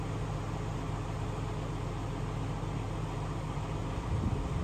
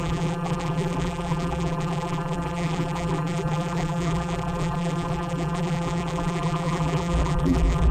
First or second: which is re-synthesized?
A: second